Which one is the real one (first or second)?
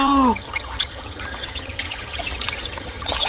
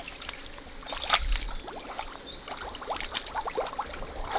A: second